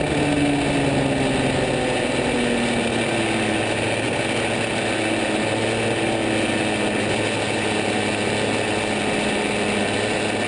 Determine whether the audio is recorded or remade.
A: recorded